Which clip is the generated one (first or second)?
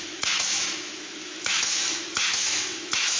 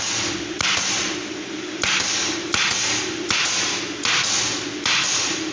first